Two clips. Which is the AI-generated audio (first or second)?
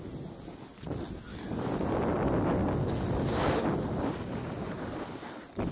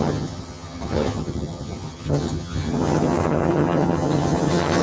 second